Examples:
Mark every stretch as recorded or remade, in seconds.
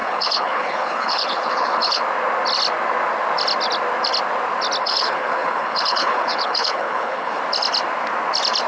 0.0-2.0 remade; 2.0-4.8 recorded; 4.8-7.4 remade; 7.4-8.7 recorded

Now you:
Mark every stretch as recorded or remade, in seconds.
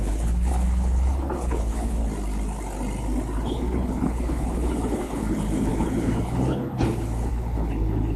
0.0-2.0 remade; 2.0-3.4 recorded; 3.4-8.2 remade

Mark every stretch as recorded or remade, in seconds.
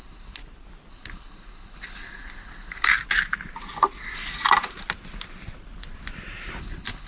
0.0-0.4 remade; 0.4-0.9 recorded; 0.9-2.9 remade; 2.9-6.6 recorded; 6.6-7.1 remade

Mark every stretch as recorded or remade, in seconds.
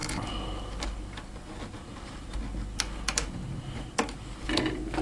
0.0-5.0 recorded